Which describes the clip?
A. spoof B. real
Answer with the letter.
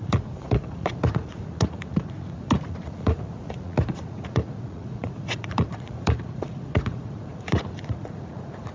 A